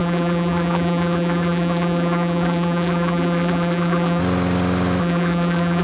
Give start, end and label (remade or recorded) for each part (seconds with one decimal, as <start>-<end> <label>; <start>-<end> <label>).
0.0-4.2 remade; 4.2-5.0 recorded; 5.0-5.8 remade